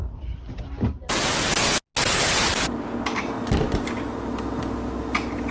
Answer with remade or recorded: recorded